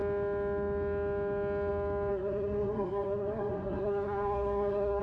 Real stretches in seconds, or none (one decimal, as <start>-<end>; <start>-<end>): 0.0-2.1